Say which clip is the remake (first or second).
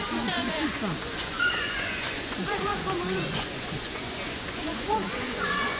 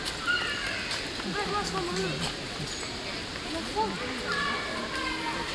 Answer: first